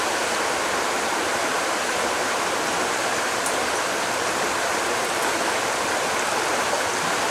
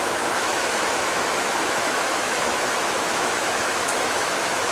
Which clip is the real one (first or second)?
first